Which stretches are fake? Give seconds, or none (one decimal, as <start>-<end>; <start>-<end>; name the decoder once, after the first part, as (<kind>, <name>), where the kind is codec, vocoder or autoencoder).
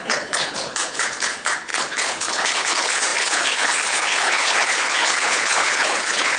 0.0-6.4 (codec, HILCodec)